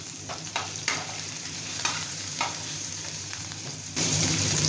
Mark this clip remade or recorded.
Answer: remade